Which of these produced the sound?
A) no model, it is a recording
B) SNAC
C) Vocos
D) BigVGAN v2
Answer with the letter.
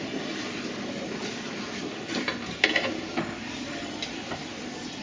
A